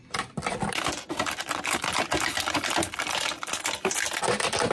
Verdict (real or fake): real